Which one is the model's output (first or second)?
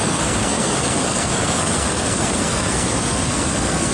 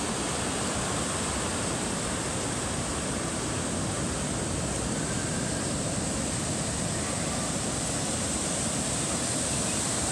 first